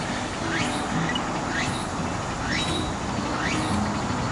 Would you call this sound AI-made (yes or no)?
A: no